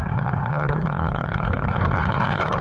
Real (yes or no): no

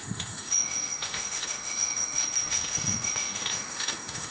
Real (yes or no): no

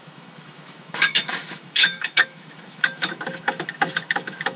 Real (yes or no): no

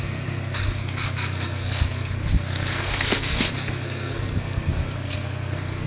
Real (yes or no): no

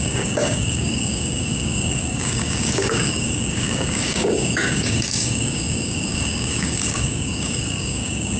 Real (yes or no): no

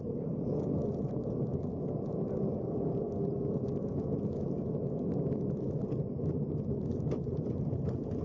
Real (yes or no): yes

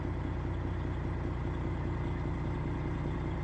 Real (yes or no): yes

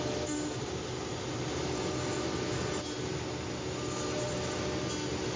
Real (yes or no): yes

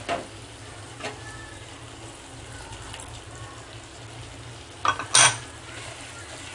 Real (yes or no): yes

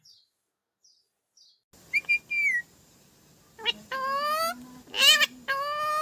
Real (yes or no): yes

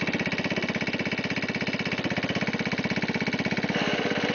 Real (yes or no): yes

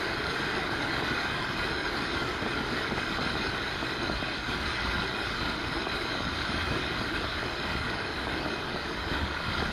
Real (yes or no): no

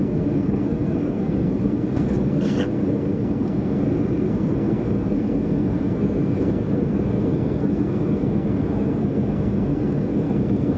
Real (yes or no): no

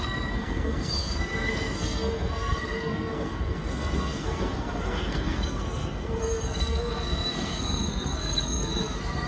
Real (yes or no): no